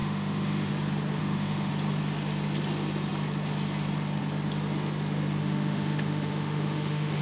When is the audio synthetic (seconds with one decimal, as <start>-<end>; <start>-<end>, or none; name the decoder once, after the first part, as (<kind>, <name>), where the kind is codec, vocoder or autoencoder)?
0.0-0.7 (autoencoder, DAC-VAE); 1.2-1.7; 5.4-7.2